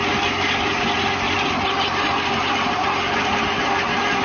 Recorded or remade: recorded